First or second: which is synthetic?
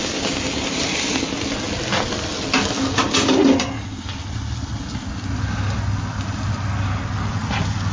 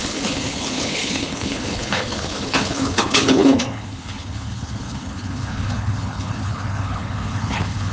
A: second